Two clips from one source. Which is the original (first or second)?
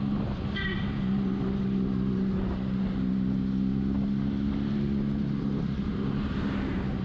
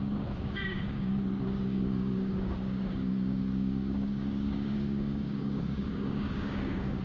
first